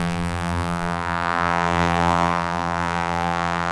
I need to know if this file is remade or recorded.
remade